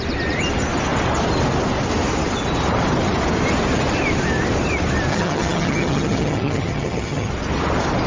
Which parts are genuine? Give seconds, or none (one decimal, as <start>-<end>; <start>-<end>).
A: 0.0-5.1; 7.3-8.1